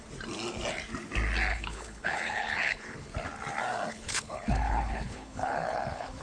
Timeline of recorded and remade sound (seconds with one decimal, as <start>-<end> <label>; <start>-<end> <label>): 0.0-1.5 recorded; 1.5-3.1 remade; 3.1-3.9 recorded; 3.9-6.2 remade